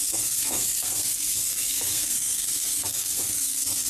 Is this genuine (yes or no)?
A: no